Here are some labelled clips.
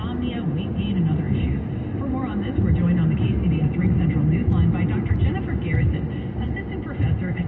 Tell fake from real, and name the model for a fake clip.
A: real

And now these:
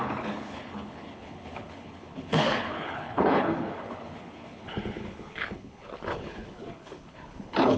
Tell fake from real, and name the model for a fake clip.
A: fake, codec, HILCodec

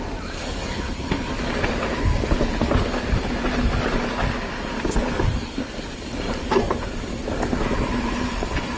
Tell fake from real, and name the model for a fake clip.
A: real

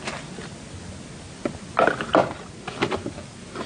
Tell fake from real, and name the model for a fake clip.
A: real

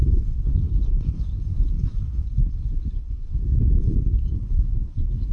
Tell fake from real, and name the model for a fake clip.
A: fake, codec, HILCodec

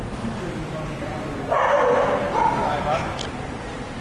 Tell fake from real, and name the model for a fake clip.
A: real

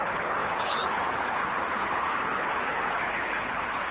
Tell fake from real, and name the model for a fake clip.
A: fake, codec, HILCodec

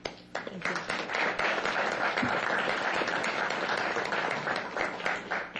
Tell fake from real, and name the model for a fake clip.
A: real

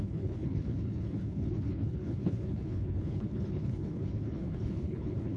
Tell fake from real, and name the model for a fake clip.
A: fake, codec, HILCodec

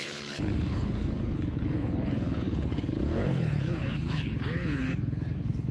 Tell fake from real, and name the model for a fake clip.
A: fake, codec, HILCodec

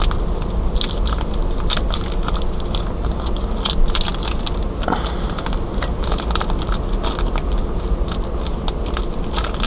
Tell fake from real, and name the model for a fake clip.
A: real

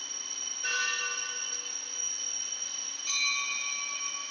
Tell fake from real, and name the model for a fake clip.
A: real